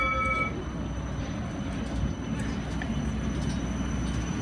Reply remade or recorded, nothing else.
recorded